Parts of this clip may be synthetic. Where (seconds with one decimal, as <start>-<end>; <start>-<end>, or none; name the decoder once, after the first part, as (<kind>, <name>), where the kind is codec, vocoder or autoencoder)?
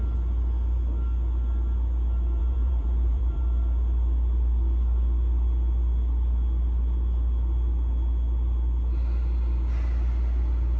2.4-3.4 (vocoder, BigVGAN v2)